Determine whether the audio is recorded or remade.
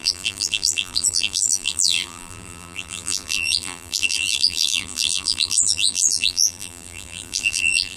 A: remade